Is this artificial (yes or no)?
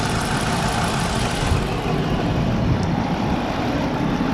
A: no